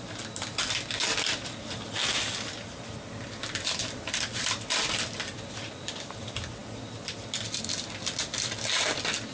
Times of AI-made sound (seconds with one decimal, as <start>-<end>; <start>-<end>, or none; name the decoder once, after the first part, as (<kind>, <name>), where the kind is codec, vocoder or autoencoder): none